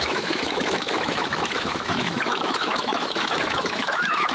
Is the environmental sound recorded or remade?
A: remade